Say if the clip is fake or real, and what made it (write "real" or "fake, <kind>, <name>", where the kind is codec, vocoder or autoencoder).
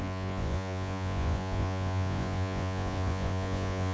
fake, vocoder, Vocos